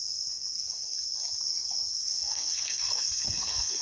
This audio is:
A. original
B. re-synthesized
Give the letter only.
B